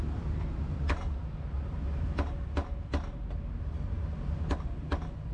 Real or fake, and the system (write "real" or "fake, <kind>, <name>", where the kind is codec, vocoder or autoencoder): real